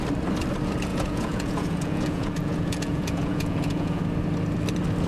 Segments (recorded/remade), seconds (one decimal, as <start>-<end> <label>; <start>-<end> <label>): 0.0-0.9 recorded; 0.9-4.0 remade; 4.0-5.1 recorded